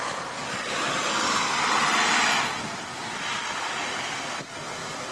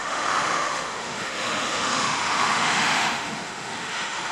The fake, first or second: second